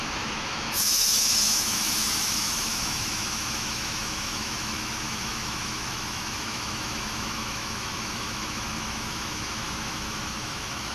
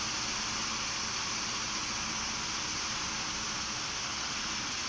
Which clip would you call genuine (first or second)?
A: second